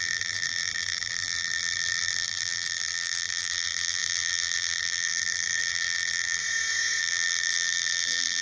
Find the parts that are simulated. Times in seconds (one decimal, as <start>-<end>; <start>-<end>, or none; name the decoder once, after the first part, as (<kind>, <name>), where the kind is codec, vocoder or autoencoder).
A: 0.0-6.4 (vocoder, BigVGAN v2); 7.0-8.4